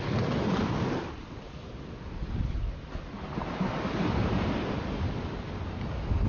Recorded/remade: recorded